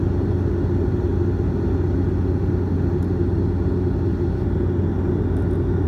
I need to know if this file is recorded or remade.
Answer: recorded